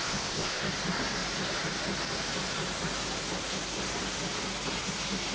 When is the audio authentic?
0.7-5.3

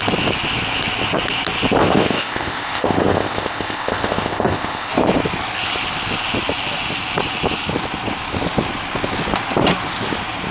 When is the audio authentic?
0.0-1.8; 4.9-10.5

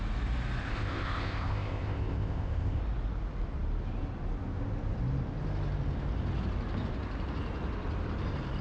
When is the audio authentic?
0.0-0.6; 2.8-8.6

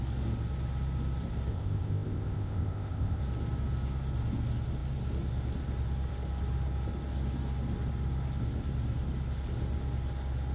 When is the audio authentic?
0.0-1.5; 3.2-10.5

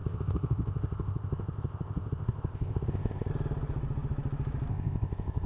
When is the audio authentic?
3.3-4.7